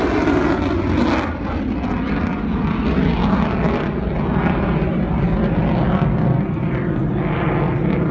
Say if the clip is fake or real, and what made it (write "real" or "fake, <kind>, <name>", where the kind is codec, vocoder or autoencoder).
real